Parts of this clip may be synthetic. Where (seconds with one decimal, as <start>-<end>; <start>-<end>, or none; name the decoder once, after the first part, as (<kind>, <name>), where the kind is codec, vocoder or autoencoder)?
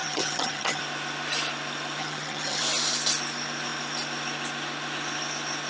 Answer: 0.0-0.8 (vocoder, HiFi-GAN); 2.0-2.6